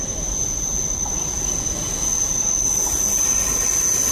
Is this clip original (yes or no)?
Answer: yes